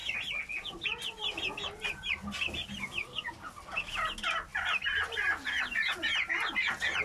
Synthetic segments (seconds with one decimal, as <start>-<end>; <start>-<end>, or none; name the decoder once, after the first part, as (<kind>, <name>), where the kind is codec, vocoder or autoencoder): none